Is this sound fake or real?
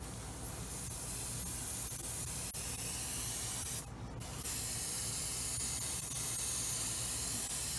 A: real